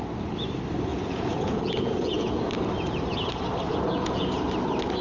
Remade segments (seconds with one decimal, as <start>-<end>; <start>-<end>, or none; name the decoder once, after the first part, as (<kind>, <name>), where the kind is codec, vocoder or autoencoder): 0.9-2.5 (vocoder, Vocos); 3.7-4.3